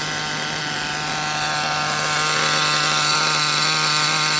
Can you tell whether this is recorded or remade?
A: recorded